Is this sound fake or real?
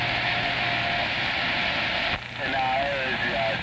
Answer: real